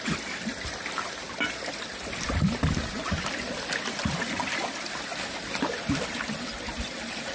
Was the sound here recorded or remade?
remade